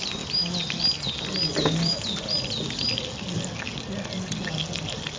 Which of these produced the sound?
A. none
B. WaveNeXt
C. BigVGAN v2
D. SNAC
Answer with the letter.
A